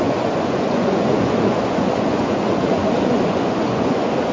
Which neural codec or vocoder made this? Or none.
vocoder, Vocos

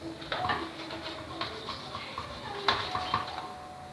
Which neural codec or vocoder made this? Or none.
none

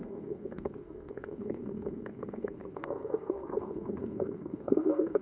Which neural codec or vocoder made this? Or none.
codec, SNAC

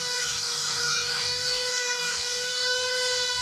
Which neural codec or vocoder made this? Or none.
codec, DAC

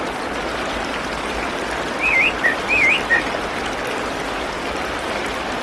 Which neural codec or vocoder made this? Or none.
none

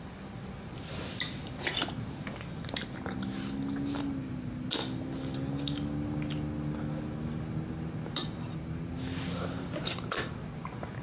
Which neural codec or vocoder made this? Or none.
none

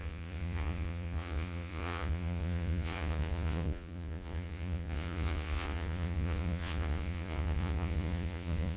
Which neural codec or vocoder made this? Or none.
vocoder, Vocos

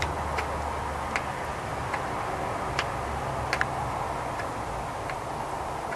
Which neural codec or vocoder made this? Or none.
none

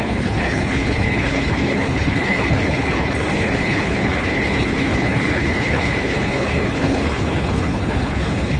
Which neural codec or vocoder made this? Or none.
codec, HILCodec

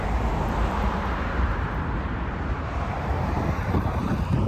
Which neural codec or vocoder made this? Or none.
vocoder, BigVGAN v2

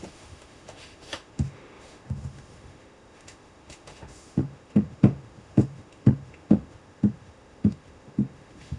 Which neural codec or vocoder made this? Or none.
autoencoder, DAC-VAE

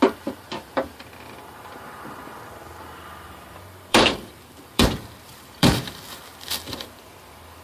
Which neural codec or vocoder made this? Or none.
vocoder, BigVGAN v2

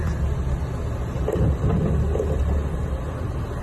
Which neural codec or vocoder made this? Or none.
none